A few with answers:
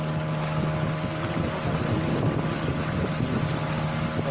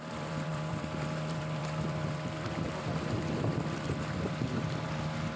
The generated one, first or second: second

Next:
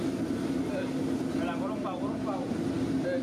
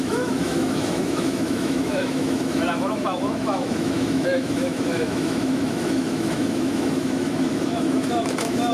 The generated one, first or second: second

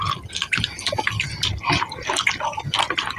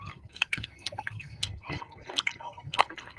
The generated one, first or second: second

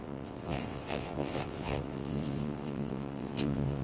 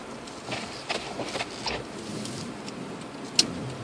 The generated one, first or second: first